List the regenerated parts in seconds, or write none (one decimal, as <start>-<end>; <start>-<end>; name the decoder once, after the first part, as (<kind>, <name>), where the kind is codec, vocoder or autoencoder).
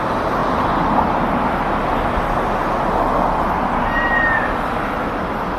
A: none